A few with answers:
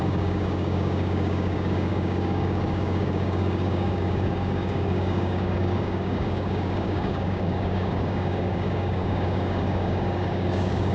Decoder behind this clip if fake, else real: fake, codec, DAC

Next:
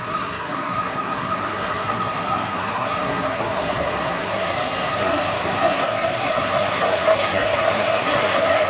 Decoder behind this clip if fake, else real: fake, codec, SNAC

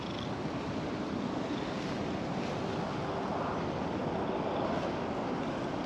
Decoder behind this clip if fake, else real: real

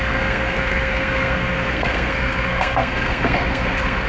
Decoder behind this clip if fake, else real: fake, codec, SNAC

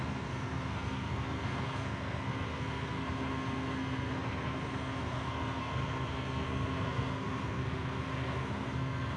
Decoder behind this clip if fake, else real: fake, codec, SNAC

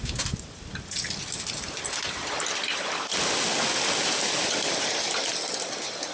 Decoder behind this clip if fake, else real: real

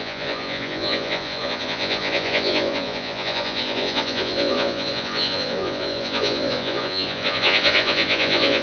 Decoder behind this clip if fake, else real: fake, vocoder, Vocos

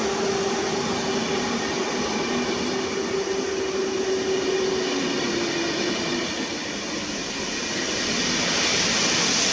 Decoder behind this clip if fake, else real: real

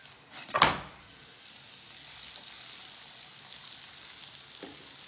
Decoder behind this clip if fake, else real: real